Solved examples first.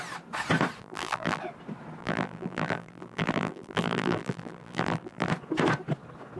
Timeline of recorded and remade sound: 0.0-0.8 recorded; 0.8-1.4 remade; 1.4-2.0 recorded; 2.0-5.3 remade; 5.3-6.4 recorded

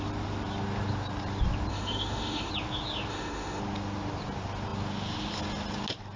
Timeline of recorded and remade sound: 0.0-1.7 recorded; 1.7-2.5 remade; 2.5-3.1 recorded; 3.1-3.6 remade; 3.6-6.2 recorded

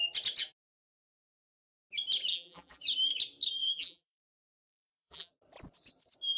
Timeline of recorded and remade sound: 0.0-2.3 recorded; 2.3-2.8 remade; 2.8-3.6 recorded; 3.6-5.3 remade; 5.3-6.4 recorded

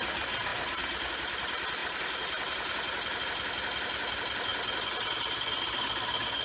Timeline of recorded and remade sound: 0.0-6.4 recorded

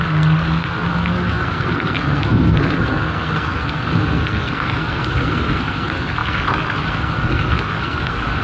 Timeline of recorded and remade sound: 0.0-8.4 remade

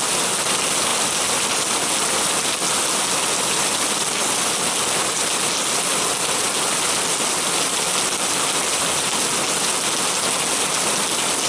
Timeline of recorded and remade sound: 0.0-11.5 recorded